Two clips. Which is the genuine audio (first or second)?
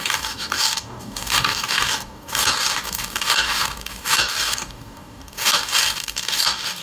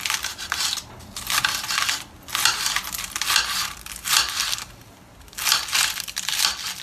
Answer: second